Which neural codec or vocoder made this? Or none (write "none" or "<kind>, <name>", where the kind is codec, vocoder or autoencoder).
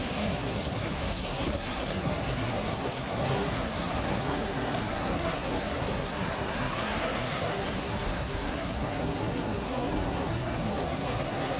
codec, SNAC